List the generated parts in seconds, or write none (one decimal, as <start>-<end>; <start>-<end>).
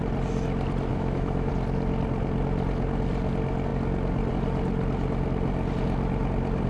0.9-1.5